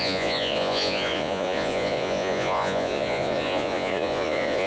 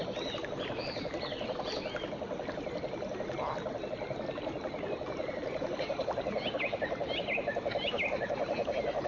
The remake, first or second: first